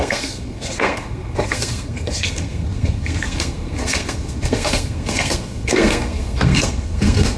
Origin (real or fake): fake